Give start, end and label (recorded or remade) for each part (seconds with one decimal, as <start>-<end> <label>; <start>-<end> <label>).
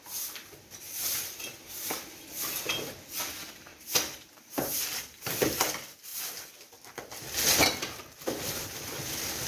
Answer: 0.0-9.5 recorded